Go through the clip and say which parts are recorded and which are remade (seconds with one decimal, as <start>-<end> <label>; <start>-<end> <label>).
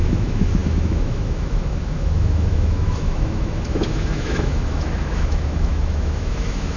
0.0-6.8 remade